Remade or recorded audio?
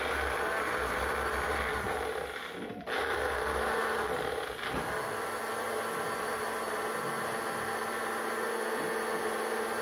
recorded